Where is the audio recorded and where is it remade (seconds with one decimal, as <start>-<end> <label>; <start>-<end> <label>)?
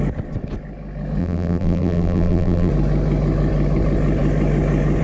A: 0.0-1.2 recorded; 1.2-2.7 remade; 2.7-5.0 recorded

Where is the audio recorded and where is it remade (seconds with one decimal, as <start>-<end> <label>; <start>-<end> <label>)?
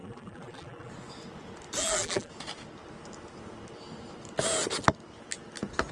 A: 0.0-0.9 remade; 0.9-1.8 recorded; 1.8-2.3 remade; 2.3-5.9 recorded